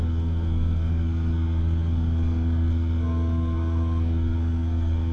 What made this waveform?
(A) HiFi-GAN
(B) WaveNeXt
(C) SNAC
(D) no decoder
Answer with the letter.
C